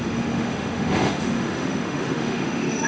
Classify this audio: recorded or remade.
remade